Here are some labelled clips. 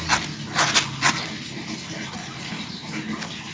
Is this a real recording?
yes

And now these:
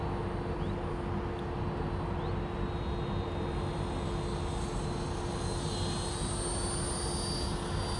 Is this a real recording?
yes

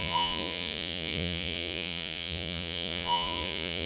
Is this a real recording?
no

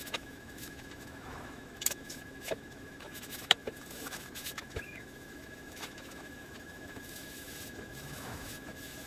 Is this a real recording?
no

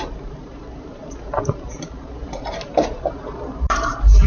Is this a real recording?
no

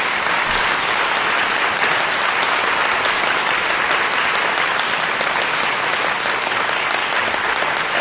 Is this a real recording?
yes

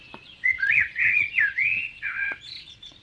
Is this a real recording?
no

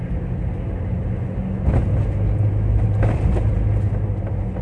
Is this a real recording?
yes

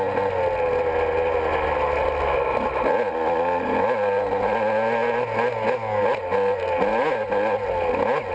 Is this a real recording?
yes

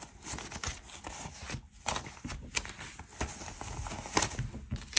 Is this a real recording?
yes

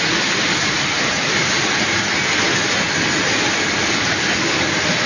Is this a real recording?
yes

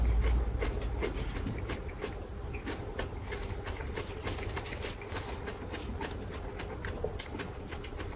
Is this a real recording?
yes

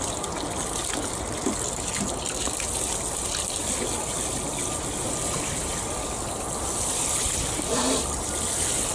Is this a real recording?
yes